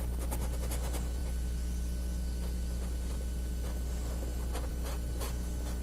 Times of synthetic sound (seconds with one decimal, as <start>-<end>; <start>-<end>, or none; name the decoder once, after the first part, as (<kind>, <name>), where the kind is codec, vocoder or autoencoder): none